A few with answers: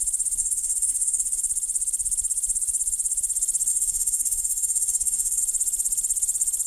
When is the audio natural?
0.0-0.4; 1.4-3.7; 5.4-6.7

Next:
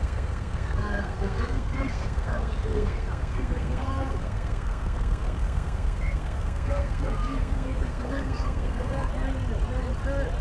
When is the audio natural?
9.1-10.4

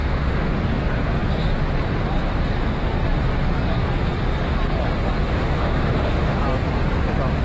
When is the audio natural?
0.5-5.2; 6.4-7.4